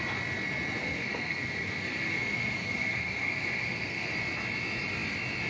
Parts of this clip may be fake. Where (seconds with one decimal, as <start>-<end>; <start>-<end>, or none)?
0.8-4.1